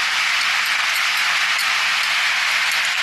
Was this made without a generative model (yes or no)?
yes